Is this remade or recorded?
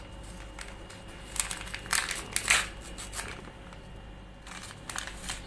recorded